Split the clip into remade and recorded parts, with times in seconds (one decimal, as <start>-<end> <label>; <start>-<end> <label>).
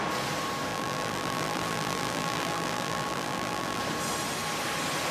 0.0-0.7 recorded; 0.7-3.8 remade; 3.8-5.1 recorded